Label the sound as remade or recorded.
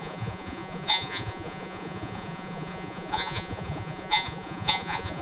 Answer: remade